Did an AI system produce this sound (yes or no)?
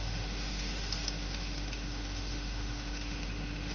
yes